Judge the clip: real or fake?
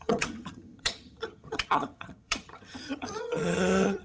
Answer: fake